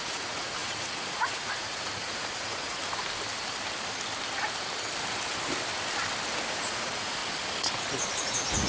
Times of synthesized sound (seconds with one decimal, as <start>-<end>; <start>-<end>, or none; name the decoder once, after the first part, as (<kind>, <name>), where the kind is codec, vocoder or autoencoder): 0.0-2.8 (vocoder, Vocos); 6.5-7.2; 8.2-8.7